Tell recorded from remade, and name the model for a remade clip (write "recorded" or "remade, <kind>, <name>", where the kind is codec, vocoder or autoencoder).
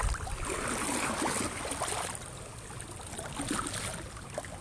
recorded